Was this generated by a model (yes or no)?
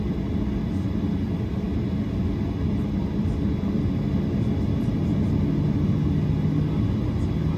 no